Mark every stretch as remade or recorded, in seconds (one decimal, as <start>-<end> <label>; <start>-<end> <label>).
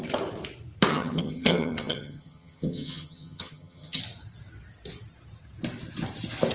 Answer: 0.0-0.9 recorded; 0.9-4.0 remade; 4.0-6.5 recorded